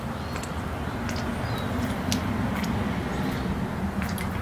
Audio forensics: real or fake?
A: real